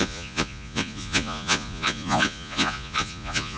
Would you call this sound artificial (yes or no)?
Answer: yes